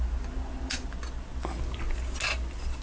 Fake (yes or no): no